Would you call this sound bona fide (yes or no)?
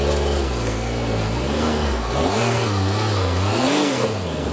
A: no